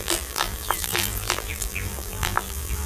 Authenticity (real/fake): fake